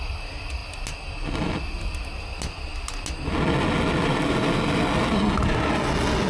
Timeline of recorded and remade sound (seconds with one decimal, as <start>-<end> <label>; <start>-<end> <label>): 0.0-6.3 recorded